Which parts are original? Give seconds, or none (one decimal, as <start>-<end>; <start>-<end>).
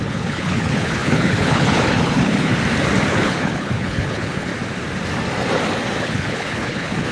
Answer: 2.5-3.1; 4.5-6.0